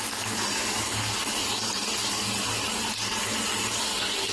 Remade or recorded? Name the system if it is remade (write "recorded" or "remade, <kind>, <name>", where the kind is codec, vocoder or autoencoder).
recorded